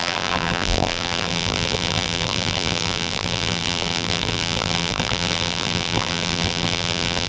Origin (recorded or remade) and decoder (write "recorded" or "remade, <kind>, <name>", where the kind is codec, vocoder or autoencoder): remade, vocoder, BigVGAN v2